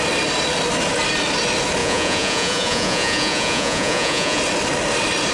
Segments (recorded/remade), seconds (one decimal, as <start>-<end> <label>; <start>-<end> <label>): 0.0-1.8 recorded; 1.8-4.4 remade; 4.4-5.3 recorded